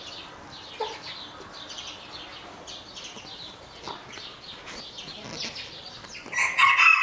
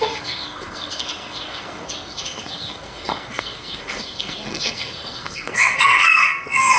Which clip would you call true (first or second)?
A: first